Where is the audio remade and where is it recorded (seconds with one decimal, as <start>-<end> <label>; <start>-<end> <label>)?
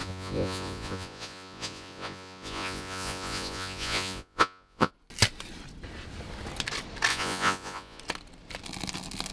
0.0-4.9 remade; 4.9-7.1 recorded; 7.1-8.0 remade; 8.0-9.3 recorded